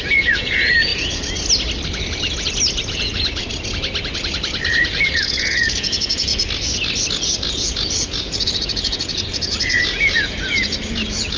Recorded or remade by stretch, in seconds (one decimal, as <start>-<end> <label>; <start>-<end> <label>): 0.0-0.9 remade; 0.9-2.9 recorded; 2.9-3.4 remade; 3.4-4.7 recorded; 4.7-6.3 remade; 6.3-7.1 recorded; 7.1-11.4 remade